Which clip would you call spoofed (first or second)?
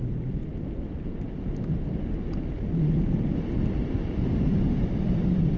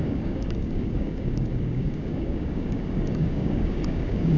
second